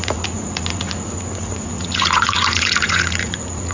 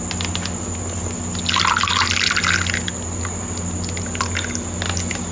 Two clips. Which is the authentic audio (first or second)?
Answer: second